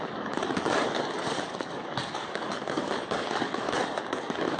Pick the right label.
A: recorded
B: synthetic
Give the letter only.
B